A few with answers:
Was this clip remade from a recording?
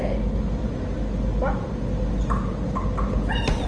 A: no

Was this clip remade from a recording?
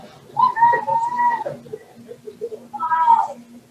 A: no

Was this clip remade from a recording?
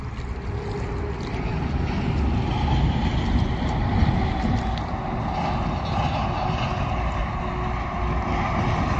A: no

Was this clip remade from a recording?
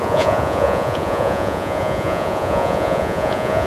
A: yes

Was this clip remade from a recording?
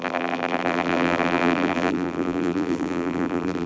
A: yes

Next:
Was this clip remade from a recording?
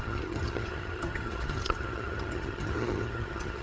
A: yes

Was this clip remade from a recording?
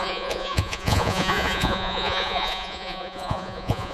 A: yes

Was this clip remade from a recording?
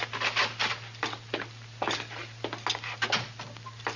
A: no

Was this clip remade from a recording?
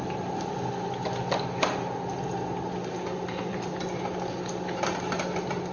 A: no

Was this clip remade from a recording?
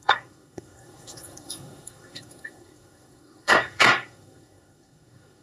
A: yes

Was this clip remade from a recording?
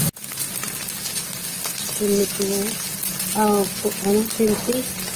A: no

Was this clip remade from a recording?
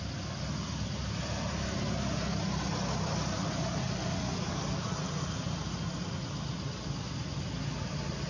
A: no